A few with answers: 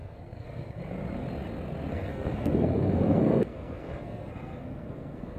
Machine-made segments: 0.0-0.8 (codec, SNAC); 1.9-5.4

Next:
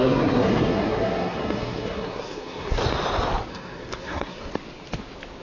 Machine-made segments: 0.0-2.8 (codec, SNAC); 3.5-4.5

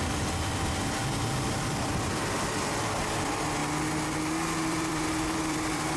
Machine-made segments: 0.0-1.0 (vocoder, BigVGAN v2); 1.9-3.6; 4.7-6.0

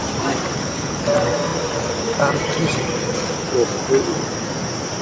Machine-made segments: 0.5-1.0 (codec, HILCodec)

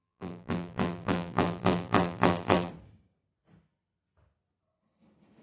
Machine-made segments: 0.0-2.7 (vocoder, BigVGAN v2)

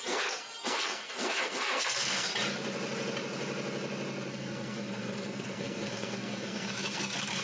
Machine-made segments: 0.0-2.3 (codec, SNAC); 4.3-7.4

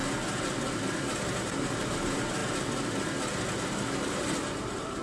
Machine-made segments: 0.7-2.4 (vocoder, BigVGAN v2); 4.1-5.0